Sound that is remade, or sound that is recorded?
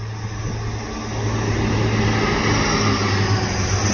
recorded